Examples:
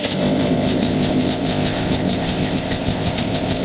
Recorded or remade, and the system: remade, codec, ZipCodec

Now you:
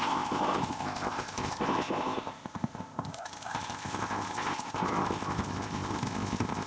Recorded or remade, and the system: remade, codec, ZipCodec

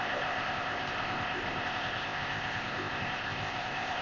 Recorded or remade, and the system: remade, codec, ZipCodec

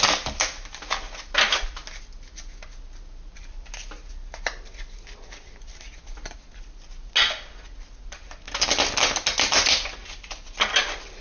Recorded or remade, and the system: recorded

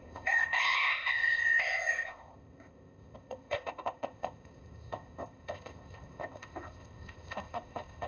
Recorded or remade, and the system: remade, codec, ZipCodec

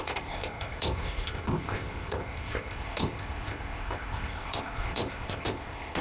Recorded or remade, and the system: remade, codec, ZipCodec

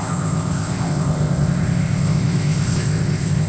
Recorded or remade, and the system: remade, codec, ZipCodec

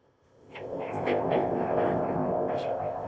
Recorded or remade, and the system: remade, codec, ZipCodec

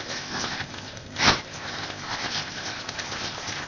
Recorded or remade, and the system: remade, codec, ZipCodec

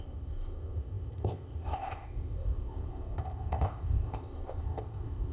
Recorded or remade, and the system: remade, codec, ZipCodec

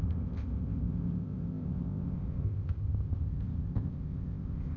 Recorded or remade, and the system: remade, codec, ZipCodec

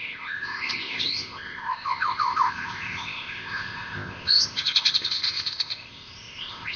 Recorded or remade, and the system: remade, codec, ZipCodec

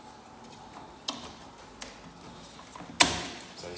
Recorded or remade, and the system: recorded